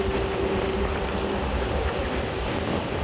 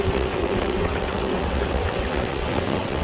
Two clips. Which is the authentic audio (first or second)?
first